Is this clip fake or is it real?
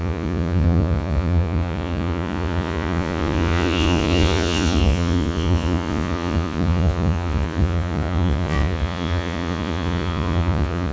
fake